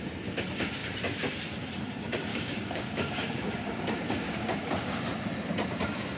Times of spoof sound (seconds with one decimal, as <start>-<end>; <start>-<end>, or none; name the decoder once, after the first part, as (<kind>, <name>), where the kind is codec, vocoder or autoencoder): 2.3-5.0 (codec, DAC)